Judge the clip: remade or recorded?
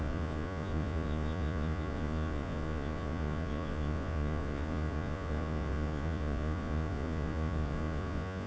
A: remade